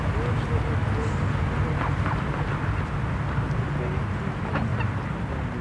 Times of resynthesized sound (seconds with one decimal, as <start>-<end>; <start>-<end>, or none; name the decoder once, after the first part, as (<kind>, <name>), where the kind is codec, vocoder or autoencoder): none